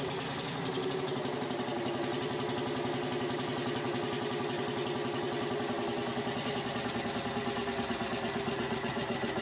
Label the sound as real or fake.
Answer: real